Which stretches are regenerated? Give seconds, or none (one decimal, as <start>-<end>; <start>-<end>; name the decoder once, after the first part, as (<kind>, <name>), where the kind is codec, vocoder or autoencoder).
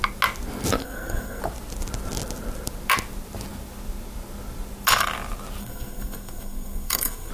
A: 0.8-1.4 (codec, SNAC); 5.6-7.3